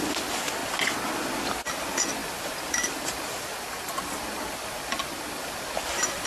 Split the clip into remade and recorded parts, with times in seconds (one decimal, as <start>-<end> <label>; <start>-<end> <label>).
0.0-2.2 recorded; 2.2-5.6 remade; 5.6-6.3 recorded